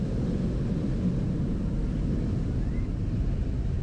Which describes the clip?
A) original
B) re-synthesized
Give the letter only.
A